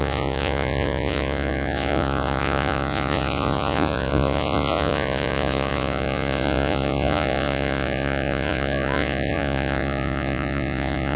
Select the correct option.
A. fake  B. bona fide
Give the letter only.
A